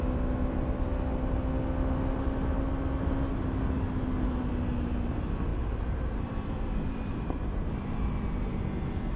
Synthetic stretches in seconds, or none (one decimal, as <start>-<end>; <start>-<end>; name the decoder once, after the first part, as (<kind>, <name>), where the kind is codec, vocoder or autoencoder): 5.5-8.6 (vocoder, BigVGAN v2)